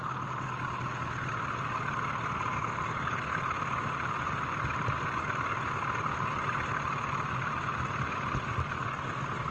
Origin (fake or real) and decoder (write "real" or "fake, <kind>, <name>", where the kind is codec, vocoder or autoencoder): real